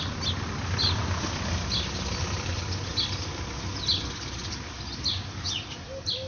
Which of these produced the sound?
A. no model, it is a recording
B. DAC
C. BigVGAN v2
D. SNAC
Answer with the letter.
A